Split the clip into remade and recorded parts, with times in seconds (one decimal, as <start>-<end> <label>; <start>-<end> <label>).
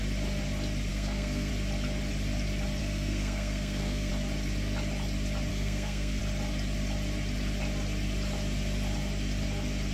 0.0-0.9 recorded; 0.9-1.5 remade; 1.5-2.8 recorded; 2.8-4.1 remade; 4.1-5.5 recorded; 5.5-6.2 remade; 6.2-9.9 recorded